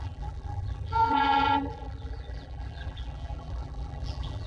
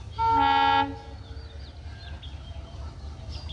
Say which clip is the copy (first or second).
first